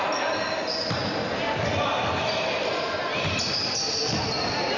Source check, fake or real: real